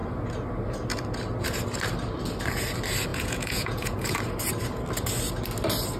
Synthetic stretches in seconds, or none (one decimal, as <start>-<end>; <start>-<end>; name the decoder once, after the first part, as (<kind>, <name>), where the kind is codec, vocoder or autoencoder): 3.1-4.2 (vocoder, Vocos)